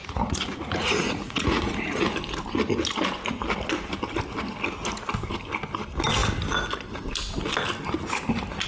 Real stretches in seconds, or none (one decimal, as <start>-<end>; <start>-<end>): 2.1-8.7